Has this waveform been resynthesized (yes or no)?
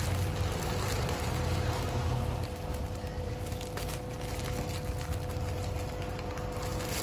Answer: no